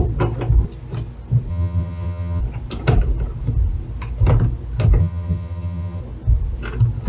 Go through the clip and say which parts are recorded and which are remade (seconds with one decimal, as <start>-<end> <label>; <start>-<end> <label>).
0.0-1.5 recorded; 1.5-2.4 remade; 2.4-5.0 recorded; 5.0-6.0 remade; 6.0-7.1 recorded